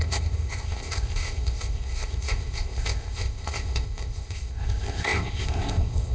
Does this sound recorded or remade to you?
remade